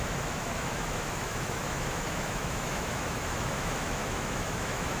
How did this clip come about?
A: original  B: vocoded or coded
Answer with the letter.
B